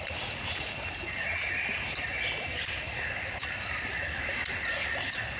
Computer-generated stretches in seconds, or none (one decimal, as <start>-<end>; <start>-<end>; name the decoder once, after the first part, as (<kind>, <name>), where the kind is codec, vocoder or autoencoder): 3.4-4.8 (vocoder, BigVGAN v2)